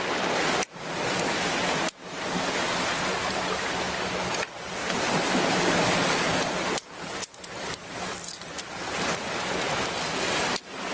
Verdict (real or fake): real